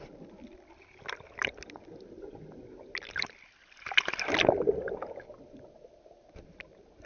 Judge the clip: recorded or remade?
recorded